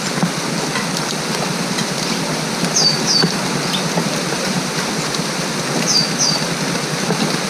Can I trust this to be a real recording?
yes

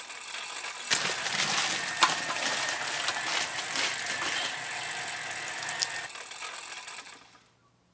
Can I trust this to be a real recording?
yes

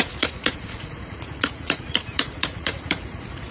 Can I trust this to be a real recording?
no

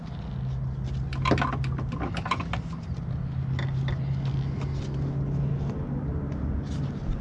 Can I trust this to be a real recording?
yes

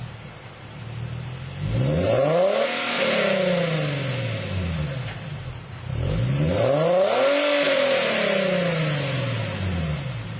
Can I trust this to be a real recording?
yes